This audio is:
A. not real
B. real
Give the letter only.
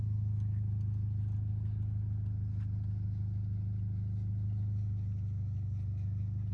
B